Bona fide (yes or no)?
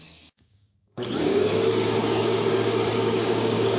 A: no